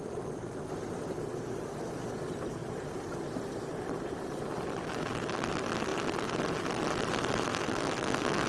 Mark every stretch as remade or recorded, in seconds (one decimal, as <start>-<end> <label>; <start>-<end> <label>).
0.0-7.5 recorded; 7.5-8.5 remade